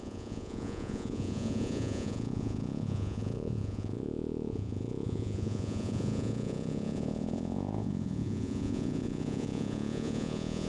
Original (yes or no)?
no